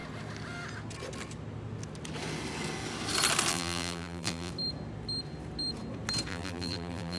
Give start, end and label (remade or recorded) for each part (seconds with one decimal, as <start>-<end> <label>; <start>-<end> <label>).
0.0-3.5 recorded; 3.5-4.5 remade; 4.5-6.3 recorded; 6.3-7.2 remade